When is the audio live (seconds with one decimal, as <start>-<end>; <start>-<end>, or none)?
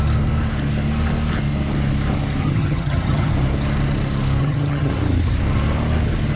0.0-2.4; 3.3-4.4; 4.9-6.4